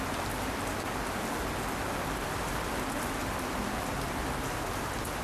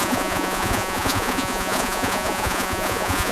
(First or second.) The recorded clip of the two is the first